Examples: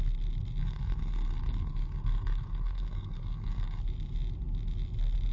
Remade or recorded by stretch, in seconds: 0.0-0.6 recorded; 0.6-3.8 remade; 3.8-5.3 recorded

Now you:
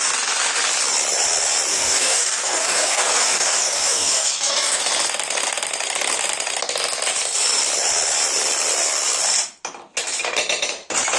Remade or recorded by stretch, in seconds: 0.0-1.7 recorded; 1.7-4.8 remade; 4.8-11.2 recorded

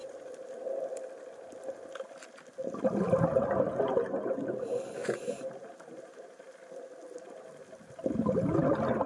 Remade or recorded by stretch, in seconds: 0.0-5.0 recorded; 5.0-6.5 remade; 6.5-9.1 recorded

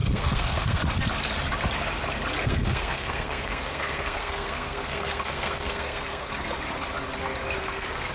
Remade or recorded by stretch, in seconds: 0.0-0.8 remade; 0.8-2.4 recorded; 2.4-6.3 remade; 6.3-7.6 recorded; 7.6-8.1 remade

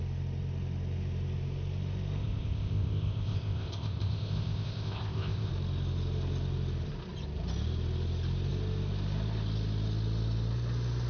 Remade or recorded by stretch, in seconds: 0.0-2.2 recorded; 2.2-5.5 remade; 5.5-11.1 recorded

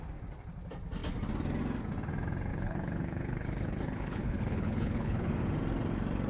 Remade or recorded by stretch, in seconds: 0.0-2.5 recorded; 2.5-5.3 remade; 5.3-6.3 recorded

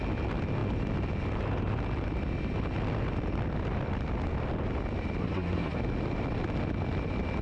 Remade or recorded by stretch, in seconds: 0.0-5.2 recorded; 5.2-5.8 remade; 5.8-7.4 recorded

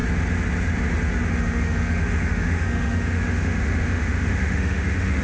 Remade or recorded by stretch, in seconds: 0.0-1.3 recorded; 1.3-5.2 remade